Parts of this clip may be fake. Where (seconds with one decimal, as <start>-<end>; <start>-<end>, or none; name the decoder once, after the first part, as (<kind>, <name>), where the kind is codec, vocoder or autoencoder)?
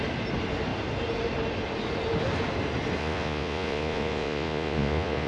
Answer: 3.0-5.3 (vocoder, Vocos)